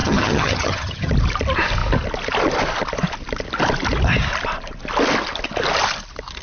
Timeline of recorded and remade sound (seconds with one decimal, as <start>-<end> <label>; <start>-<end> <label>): 0.0-1.1 remade; 1.1-6.4 recorded